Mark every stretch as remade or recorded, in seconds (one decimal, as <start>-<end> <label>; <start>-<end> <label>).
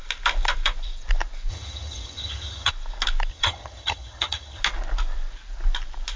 0.0-1.5 recorded; 1.5-2.7 remade; 2.7-3.3 recorded; 3.3-4.6 remade; 4.6-6.2 recorded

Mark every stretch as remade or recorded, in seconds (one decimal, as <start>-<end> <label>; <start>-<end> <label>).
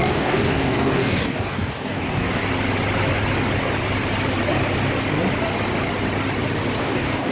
0.0-2.4 remade; 2.4-6.8 recorded; 6.8-7.3 remade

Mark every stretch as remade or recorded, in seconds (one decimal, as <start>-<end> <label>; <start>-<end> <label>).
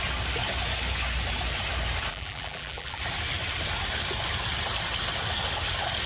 0.0-2.1 recorded; 2.1-3.0 remade; 3.0-6.1 recorded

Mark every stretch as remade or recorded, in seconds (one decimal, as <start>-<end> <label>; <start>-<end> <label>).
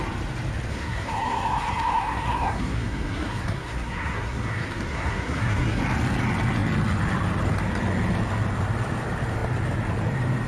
0.0-0.7 recorded; 0.7-5.8 remade; 5.8-10.5 recorded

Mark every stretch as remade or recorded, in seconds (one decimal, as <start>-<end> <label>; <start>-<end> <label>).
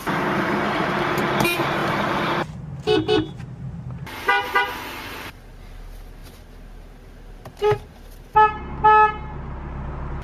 0.0-10.2 recorded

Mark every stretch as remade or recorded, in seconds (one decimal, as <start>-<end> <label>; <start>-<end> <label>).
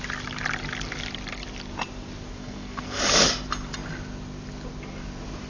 0.0-2.4 recorded; 2.4-3.0 remade; 3.0-5.5 recorded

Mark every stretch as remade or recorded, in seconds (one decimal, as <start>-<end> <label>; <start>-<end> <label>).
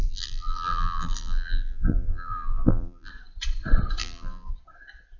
0.0-3.1 remade; 3.1-4.0 recorded; 4.0-4.5 remade; 4.5-5.2 recorded